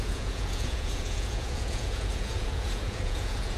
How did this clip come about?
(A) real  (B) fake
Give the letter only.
B